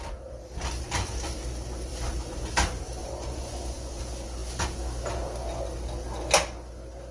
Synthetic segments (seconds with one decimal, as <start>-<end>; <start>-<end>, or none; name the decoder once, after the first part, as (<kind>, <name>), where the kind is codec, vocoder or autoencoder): 3.0-4.0 (vocoder, Vocos)